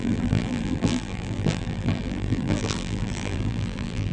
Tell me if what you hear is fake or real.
fake